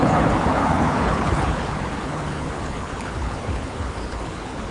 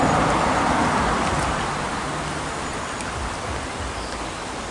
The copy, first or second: first